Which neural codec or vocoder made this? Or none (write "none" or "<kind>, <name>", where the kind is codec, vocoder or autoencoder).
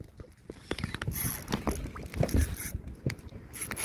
none